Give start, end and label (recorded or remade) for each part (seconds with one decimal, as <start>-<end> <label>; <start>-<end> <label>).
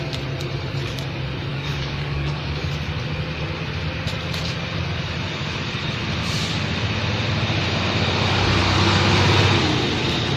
0.0-1.5 recorded; 1.5-2.7 remade; 2.7-8.6 recorded; 8.6-9.1 remade; 9.1-10.4 recorded